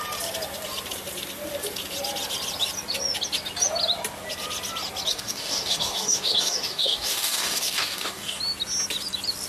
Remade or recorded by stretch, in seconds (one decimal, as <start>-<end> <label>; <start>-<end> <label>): 0.0-5.1 recorded; 5.1-8.4 remade; 8.4-9.5 recorded